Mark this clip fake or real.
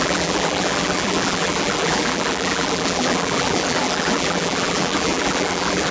fake